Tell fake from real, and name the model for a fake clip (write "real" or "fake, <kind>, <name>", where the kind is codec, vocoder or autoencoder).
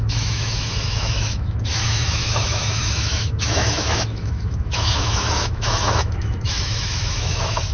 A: fake, autoencoder, DAC-VAE